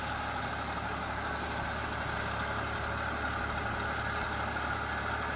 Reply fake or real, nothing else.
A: real